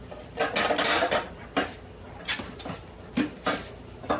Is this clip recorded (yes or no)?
yes